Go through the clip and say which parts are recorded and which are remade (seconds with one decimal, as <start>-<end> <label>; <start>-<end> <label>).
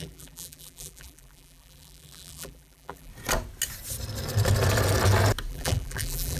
0.0-3.1 remade; 3.1-5.5 recorded; 5.5-6.4 remade